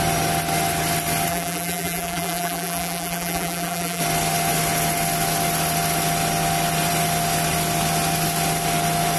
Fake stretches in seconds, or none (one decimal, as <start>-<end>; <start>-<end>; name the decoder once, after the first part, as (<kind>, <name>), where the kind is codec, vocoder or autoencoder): 1.3-4.0 (vocoder, BigVGAN v2)